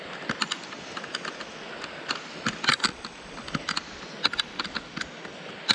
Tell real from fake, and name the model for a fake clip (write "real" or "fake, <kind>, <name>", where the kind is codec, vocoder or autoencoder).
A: real